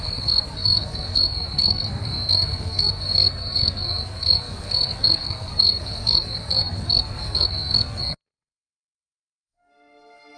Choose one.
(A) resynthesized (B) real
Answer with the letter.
A